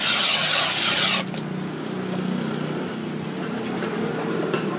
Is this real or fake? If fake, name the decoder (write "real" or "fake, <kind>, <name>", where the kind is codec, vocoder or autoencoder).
real